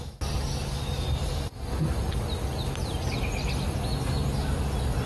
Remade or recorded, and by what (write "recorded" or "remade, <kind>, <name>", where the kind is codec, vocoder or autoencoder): recorded